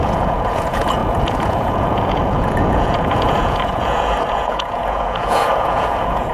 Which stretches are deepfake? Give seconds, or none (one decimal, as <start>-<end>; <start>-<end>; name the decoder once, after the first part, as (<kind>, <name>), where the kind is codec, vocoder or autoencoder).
0.0-6.3 (vocoder, Vocos)